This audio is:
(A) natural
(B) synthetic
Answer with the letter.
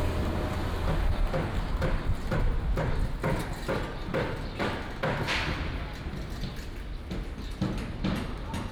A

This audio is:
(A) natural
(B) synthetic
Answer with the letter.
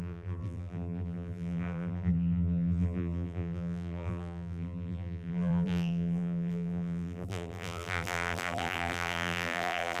B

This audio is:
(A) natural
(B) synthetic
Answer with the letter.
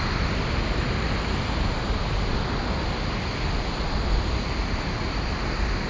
A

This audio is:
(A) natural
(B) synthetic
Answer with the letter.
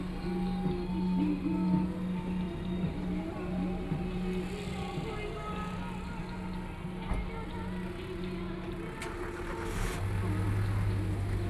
A